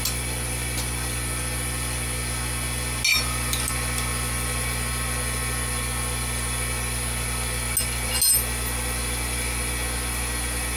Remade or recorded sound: recorded